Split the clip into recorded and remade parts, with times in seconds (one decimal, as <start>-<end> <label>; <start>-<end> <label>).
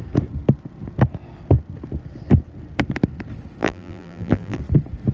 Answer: 0.0-3.6 recorded; 3.6-4.6 remade; 4.6-5.1 recorded